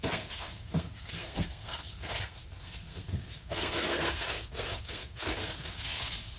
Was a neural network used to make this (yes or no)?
yes